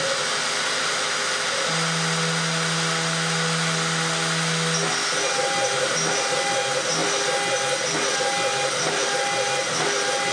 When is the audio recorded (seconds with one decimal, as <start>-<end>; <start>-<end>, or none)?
0.0-10.3